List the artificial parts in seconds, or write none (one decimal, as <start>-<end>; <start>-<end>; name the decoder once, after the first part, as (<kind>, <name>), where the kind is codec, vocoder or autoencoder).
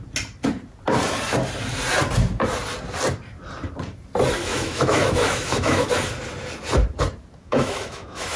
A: 4.5-5.9 (autoencoder, DAC-VAE); 7.4-8.4